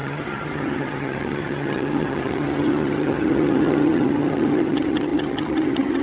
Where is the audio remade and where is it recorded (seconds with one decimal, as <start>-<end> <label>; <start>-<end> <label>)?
0.0-6.0 remade